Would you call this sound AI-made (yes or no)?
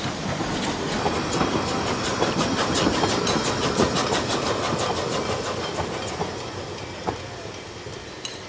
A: no